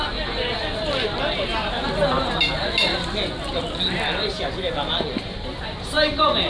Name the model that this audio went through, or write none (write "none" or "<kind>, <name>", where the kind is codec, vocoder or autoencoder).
none